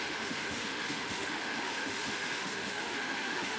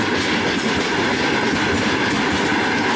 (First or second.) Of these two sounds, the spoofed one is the first